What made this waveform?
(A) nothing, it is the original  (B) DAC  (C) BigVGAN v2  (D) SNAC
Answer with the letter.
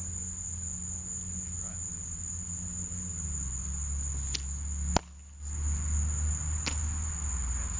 A